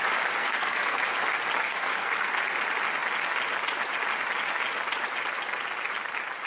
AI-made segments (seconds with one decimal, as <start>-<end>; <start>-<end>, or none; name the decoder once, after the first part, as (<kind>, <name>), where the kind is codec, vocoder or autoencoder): 0.4-1.0 (codec, SNAC); 1.6-2.4